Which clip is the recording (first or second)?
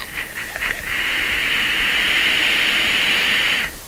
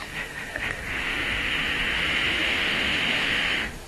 first